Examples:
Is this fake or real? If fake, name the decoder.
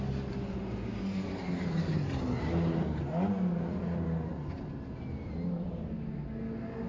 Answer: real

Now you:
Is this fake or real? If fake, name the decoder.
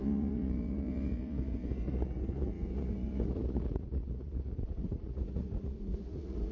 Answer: fake, vocoder, Vocos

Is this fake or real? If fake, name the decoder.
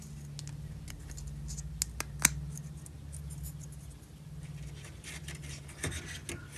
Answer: real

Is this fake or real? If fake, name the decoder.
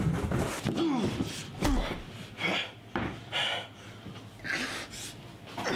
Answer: real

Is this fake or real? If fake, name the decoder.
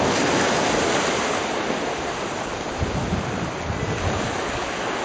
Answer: real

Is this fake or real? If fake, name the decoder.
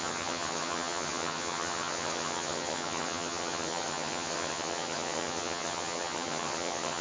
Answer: fake, vocoder, HiFi-GAN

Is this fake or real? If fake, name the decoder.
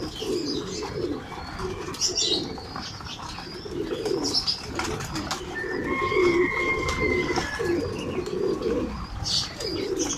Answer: real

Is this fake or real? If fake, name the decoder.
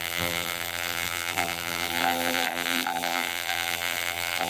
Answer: fake, vocoder, BigVGAN v2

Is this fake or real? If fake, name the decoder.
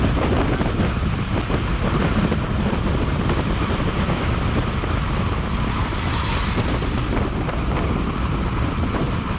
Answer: real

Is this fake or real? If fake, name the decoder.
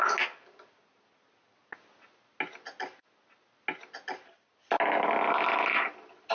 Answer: real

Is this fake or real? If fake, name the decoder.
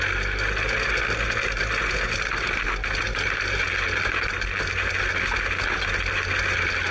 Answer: real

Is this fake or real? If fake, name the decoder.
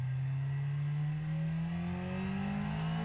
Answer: real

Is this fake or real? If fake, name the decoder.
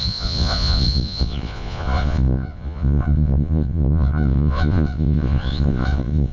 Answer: fake, vocoder, Vocos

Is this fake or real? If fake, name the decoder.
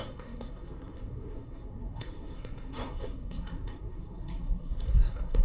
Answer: fake, codec, SNAC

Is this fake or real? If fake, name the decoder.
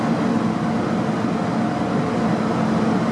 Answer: real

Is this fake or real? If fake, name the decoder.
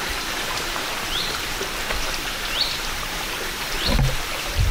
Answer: fake, vocoder, BigVGAN v2